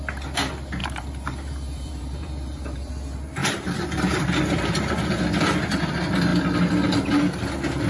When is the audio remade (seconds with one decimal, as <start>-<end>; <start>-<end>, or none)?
0.8-2.9; 3.4-5.2